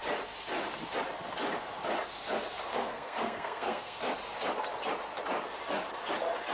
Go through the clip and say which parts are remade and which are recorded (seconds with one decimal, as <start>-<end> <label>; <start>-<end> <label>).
0.0-2.7 recorded; 2.7-4.0 remade; 4.0-6.5 recorded